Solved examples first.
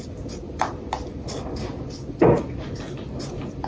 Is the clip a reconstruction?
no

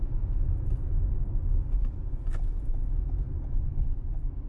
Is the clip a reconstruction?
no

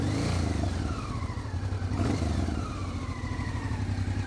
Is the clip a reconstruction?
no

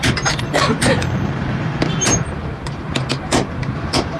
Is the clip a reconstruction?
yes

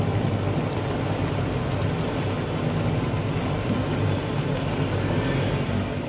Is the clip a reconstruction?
no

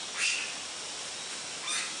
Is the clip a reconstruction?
no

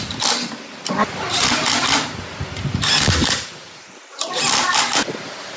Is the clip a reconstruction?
no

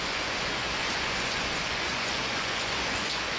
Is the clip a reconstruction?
yes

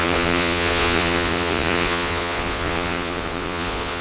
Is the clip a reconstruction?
yes